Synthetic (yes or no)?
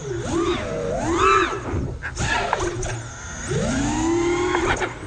no